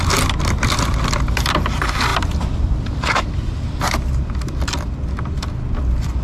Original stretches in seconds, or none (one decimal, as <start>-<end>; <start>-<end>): 0.0-6.2